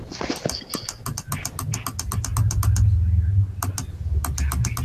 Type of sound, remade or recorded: recorded